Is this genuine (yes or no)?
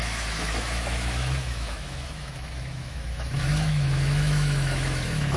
no